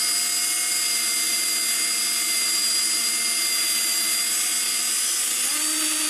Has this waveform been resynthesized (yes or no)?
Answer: no